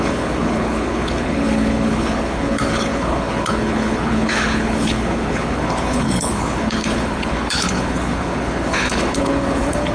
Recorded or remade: remade